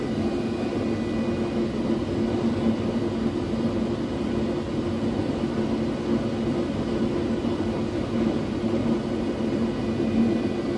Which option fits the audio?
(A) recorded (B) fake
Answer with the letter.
A